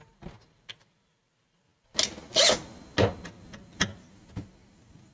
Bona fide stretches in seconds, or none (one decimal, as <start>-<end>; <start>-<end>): 0.0-5.1